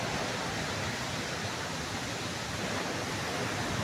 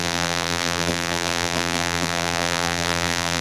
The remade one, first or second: second